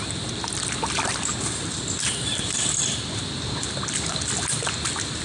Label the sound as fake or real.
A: real